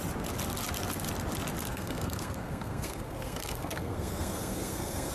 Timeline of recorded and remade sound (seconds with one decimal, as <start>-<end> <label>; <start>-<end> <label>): 0.0-1.7 recorded; 1.7-5.1 remade